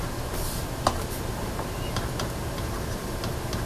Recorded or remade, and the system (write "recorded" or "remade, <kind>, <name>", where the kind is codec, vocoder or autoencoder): remade, vocoder, BigVGAN v2